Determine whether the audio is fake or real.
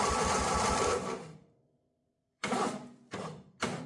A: fake